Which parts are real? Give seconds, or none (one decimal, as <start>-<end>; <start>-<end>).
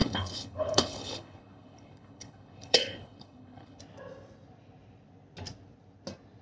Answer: 3.8-6.4